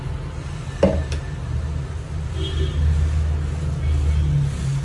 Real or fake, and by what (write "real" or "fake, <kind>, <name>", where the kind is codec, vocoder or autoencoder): real